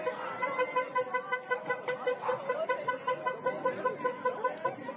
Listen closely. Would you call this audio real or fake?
real